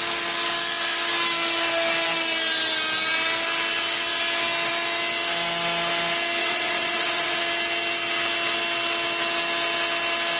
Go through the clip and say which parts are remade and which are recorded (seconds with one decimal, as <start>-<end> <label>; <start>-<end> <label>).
0.0-6.4 recorded; 6.4-7.4 remade; 7.4-10.4 recorded